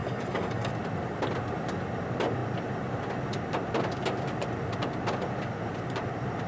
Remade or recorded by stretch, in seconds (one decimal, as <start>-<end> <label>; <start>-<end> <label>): 0.0-0.7 remade; 0.7-6.5 recorded